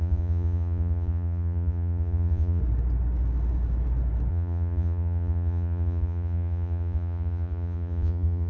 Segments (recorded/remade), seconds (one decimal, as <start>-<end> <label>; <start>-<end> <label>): 0.0-2.6 remade; 2.6-4.3 recorded; 4.3-8.5 remade